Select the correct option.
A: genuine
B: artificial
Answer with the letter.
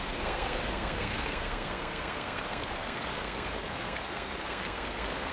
B